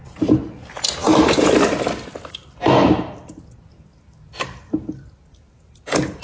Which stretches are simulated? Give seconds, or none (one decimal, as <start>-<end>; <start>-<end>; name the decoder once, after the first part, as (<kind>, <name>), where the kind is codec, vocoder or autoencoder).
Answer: none